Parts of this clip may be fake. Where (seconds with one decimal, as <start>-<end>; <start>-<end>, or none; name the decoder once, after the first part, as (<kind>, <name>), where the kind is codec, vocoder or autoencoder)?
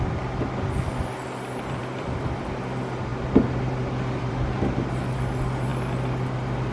1.8-2.4 (vocoder, BigVGAN v2)